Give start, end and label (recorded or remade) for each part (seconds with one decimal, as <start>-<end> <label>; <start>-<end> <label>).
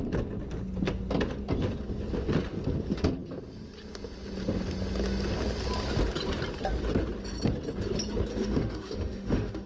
0.0-8.3 recorded; 8.3-9.7 remade